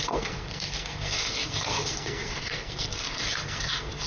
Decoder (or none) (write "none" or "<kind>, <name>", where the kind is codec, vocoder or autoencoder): codec, SNAC